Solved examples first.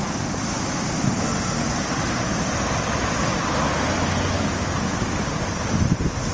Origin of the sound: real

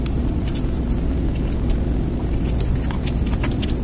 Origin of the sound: real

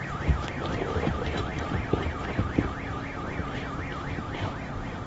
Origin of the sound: fake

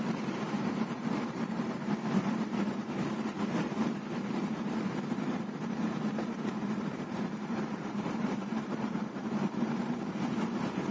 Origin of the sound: fake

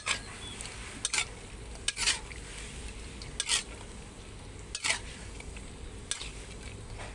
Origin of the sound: real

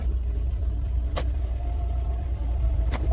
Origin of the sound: fake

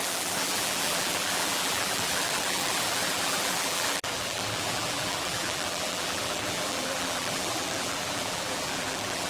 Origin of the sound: fake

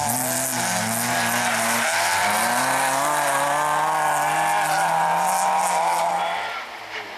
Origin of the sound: real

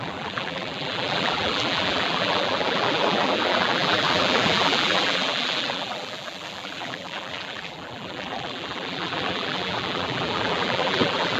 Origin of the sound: fake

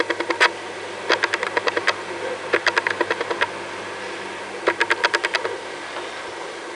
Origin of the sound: real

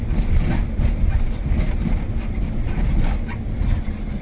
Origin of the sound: fake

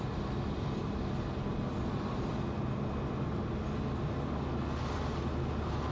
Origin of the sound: real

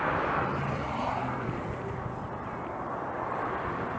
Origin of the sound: fake